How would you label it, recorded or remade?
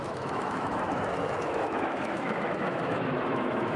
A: remade